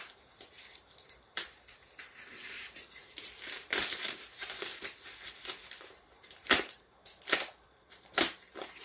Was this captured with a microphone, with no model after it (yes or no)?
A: no